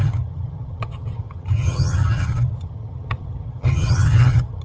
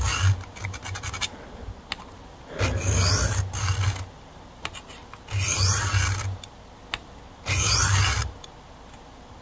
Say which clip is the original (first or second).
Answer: second